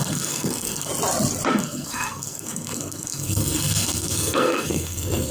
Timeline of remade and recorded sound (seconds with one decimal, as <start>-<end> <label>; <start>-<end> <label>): 0.0-0.9 remade; 0.9-1.5 recorded; 1.5-5.3 remade